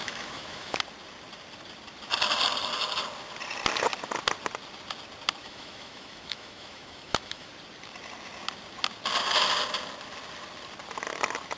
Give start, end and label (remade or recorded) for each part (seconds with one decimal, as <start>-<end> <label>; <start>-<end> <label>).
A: 0.0-0.8 remade; 0.8-5.4 recorded; 5.4-7.5 remade; 7.5-11.6 recorded